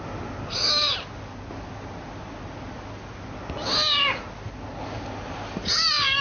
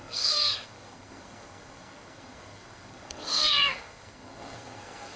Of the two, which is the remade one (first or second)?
second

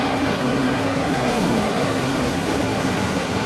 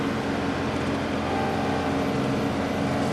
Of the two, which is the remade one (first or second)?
first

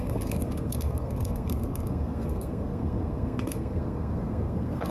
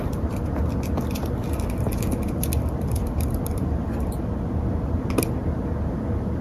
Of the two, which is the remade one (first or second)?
first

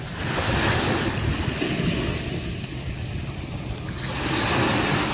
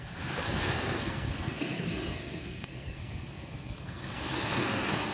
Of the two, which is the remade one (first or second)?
second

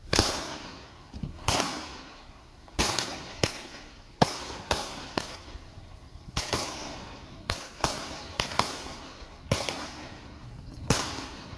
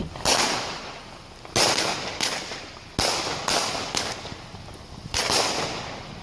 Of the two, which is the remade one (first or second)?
first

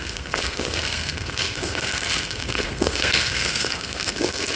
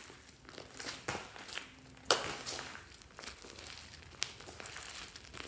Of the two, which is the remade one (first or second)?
first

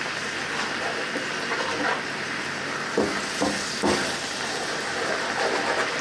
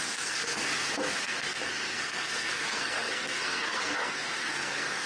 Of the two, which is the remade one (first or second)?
second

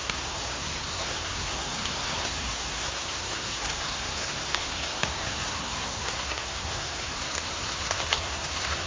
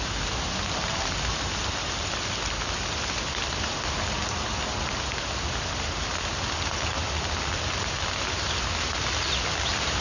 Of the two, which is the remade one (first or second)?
first